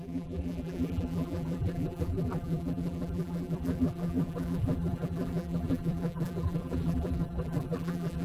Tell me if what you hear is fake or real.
fake